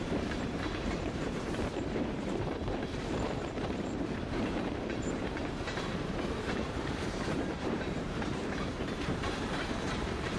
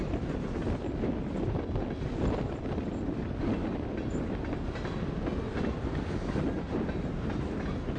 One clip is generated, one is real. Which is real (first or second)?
second